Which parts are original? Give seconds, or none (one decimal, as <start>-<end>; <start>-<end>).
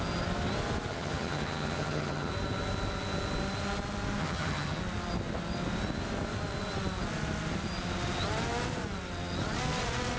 0.0-0.9; 2.3-4.2; 4.8-10.2